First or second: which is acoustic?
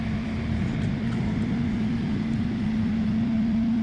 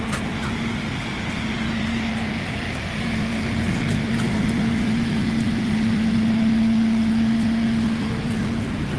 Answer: second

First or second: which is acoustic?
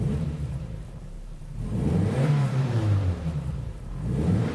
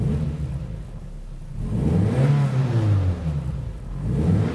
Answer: second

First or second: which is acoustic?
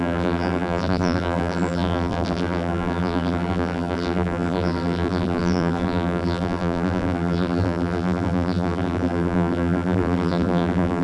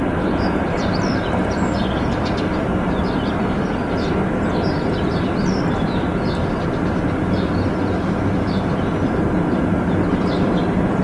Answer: second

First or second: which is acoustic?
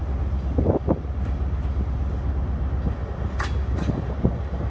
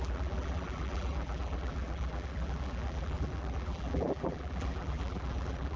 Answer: first